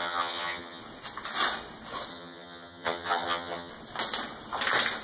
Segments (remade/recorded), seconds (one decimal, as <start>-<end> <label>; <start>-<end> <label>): 0.0-0.8 remade; 0.8-2.1 recorded; 2.1-3.7 remade; 3.7-5.0 recorded